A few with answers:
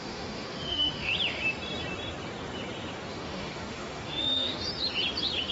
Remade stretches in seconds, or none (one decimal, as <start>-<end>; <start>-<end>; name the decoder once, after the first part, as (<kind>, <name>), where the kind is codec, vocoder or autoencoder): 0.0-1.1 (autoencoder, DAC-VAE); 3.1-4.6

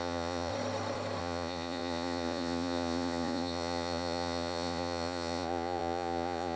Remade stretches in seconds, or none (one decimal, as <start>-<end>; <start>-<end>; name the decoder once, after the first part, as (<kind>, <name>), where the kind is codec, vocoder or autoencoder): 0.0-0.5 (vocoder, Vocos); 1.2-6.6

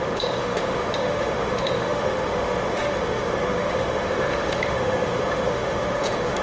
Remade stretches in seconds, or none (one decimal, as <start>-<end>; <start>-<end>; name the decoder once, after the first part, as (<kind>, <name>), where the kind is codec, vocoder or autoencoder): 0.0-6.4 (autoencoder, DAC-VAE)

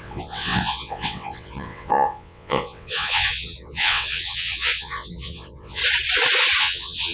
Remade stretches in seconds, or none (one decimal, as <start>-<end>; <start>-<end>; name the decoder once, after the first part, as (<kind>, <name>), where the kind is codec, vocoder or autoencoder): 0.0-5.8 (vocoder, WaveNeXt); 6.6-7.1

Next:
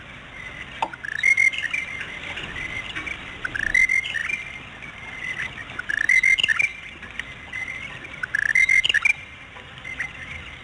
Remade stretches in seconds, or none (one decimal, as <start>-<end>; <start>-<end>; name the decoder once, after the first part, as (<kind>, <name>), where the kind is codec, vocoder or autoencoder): none

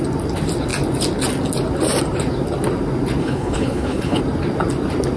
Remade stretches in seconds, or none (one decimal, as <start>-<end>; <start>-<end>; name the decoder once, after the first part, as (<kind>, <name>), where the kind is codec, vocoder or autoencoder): 3.2-4.2 (codec, HILCodec)